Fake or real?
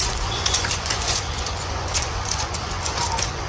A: fake